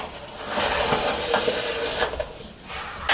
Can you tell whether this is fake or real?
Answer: real